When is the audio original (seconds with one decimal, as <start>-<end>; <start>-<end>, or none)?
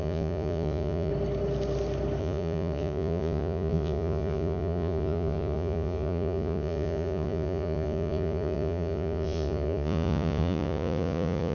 1.1-2.2